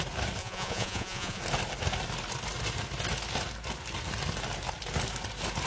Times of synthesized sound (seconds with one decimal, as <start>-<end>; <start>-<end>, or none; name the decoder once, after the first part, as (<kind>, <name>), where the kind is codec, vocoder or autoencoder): 0.4-1.4 (vocoder, Vocos)